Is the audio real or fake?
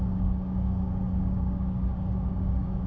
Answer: fake